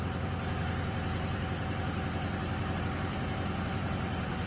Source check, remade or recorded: remade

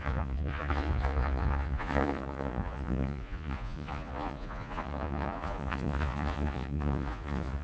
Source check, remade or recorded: remade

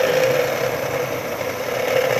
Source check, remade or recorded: recorded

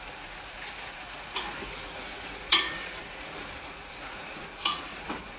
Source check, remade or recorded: remade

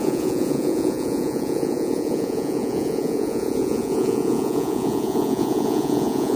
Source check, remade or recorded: remade